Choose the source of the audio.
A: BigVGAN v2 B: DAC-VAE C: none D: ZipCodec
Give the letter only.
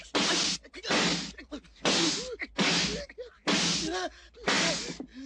C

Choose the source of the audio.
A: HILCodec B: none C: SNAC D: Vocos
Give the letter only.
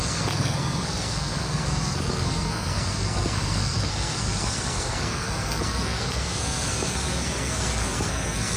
C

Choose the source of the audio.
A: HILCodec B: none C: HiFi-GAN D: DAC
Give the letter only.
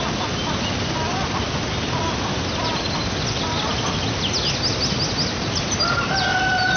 B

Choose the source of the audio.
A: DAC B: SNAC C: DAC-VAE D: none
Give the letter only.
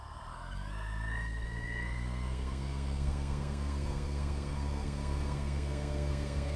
B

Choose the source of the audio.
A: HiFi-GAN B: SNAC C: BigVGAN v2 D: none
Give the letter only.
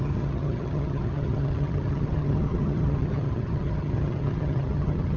A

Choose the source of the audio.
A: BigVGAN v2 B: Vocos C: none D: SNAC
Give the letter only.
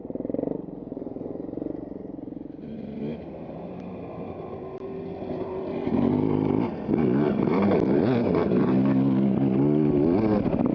C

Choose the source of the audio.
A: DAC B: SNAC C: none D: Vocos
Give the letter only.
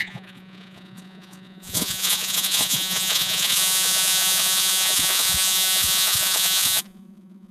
D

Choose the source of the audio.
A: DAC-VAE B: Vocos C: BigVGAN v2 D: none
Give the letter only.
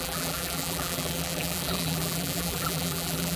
C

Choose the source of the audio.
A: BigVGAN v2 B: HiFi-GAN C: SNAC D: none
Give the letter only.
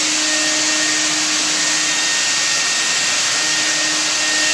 D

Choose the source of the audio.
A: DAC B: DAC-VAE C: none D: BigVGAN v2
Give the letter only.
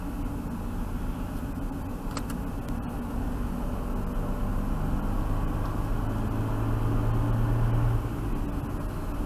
C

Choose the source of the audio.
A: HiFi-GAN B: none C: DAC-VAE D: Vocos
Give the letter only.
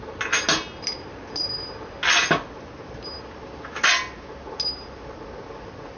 B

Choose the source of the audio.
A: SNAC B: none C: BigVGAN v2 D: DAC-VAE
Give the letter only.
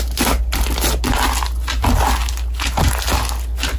B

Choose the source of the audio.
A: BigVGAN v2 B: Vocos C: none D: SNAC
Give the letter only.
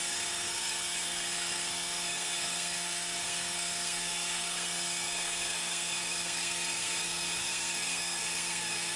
D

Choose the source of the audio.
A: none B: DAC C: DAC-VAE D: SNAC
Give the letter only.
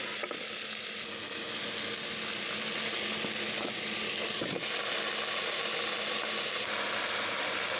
A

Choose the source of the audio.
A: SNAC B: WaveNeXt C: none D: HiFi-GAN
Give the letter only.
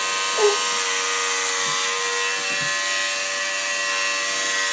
C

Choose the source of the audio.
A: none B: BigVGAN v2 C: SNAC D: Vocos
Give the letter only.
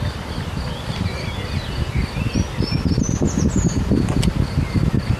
A